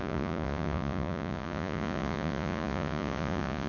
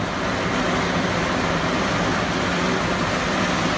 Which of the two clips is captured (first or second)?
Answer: second